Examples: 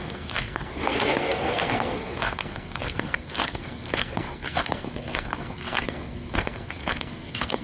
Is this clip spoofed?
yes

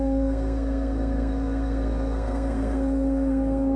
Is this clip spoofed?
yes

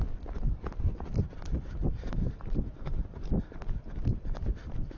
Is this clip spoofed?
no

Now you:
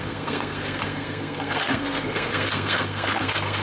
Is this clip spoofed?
yes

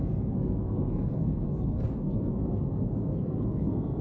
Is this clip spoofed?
yes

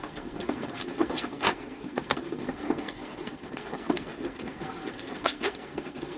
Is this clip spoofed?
yes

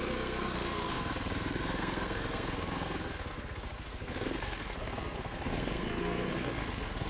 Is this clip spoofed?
yes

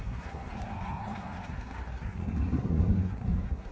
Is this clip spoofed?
yes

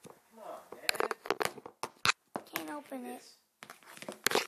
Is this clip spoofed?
no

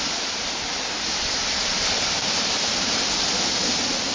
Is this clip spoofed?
no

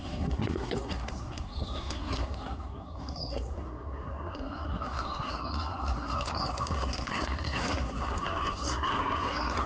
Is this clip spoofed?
yes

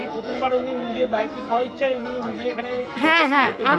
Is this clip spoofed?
yes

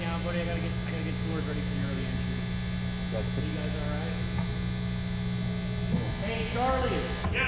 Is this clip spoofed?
no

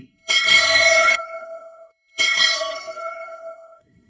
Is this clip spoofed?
yes